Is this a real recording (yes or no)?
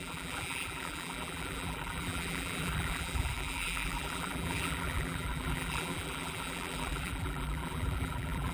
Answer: no